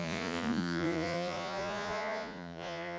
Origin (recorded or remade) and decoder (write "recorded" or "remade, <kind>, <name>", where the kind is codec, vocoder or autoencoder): remade, vocoder, Vocos